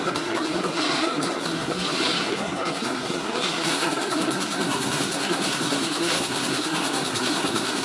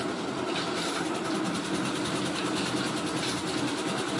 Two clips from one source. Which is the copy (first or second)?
first